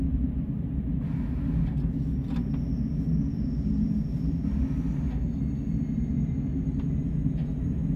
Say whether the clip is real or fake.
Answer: real